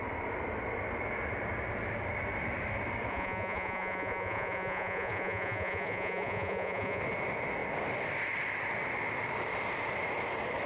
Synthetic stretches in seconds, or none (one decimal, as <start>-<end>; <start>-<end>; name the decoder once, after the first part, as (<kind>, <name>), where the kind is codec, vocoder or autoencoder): 3.1-7.0 (vocoder, Vocos)